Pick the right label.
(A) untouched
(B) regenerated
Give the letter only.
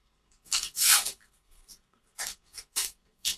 B